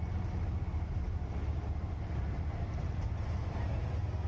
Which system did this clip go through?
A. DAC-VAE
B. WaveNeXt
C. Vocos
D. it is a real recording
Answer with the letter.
D